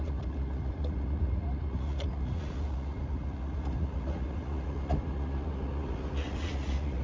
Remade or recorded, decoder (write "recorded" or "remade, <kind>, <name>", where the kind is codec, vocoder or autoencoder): remade, vocoder, Vocos